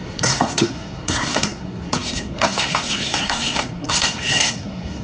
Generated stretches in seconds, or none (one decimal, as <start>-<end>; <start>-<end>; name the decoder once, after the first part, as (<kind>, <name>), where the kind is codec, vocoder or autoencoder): 0.0-5.0 (codec, SNAC)